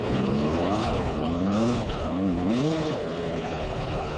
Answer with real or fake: fake